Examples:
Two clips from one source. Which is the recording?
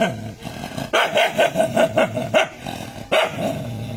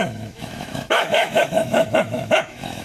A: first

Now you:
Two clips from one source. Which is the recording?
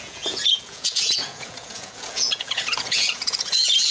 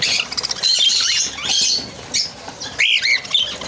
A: second